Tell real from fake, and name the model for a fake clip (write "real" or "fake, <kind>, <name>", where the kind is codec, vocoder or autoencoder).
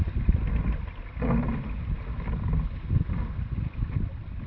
real